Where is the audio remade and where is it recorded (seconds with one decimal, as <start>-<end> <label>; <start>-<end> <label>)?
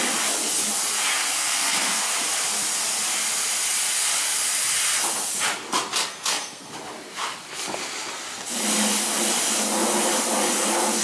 0.0-1.2 recorded; 1.2-2.0 remade; 2.0-6.1 recorded; 6.1-6.7 remade; 6.7-11.0 recorded